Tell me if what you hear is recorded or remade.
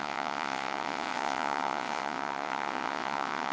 remade